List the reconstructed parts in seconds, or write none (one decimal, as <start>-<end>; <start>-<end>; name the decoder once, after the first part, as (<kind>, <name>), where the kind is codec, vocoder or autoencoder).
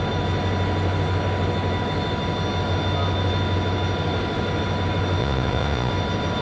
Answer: 5.2-5.9 (vocoder, Vocos)